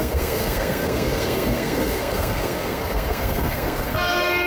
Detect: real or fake fake